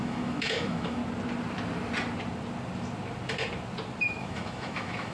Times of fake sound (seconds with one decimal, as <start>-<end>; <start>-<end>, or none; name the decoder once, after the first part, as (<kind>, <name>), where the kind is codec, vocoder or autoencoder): 0.0-1.0 (autoencoder, DAC-VAE); 4.0-5.1